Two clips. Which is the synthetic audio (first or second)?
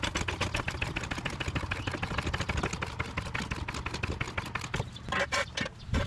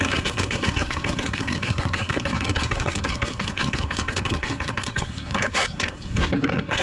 second